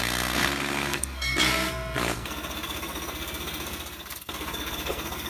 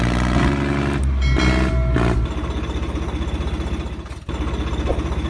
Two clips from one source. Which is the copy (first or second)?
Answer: first